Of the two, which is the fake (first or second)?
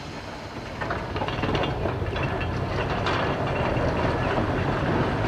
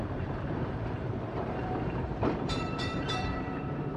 second